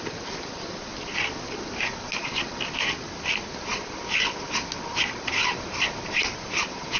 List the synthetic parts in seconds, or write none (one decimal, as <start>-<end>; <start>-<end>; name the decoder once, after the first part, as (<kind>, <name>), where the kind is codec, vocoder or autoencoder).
5.4-7.0 (vocoder, BigVGAN v2)